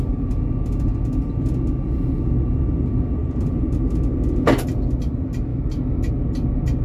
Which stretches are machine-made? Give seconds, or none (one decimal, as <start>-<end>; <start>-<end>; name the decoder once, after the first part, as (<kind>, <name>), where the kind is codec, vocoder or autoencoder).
5.5-6.1 (autoencoder, DAC-VAE)